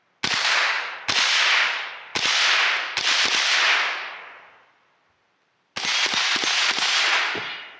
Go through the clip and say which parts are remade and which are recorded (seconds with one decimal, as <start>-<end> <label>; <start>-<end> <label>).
0.0-7.8 recorded